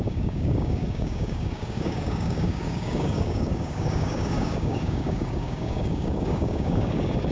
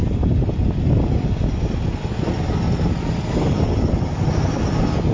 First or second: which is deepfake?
first